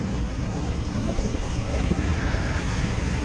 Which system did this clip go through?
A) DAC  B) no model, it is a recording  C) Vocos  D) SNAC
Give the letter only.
D